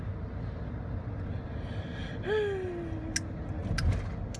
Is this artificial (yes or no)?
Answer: no